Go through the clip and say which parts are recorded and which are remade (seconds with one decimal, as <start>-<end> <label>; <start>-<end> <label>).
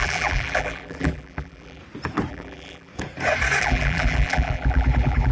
0.0-1.8 remade; 1.8-2.3 recorded; 2.3-2.9 remade; 2.9-3.6 recorded; 3.6-5.3 remade